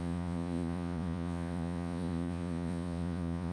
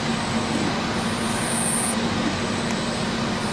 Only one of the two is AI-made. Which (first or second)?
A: first